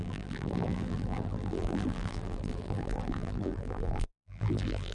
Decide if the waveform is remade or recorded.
remade